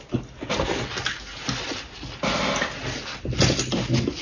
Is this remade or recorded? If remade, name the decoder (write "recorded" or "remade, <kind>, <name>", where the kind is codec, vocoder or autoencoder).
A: recorded